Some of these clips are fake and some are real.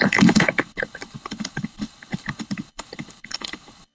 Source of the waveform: fake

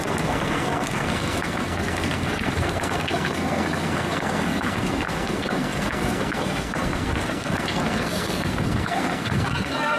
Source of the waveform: fake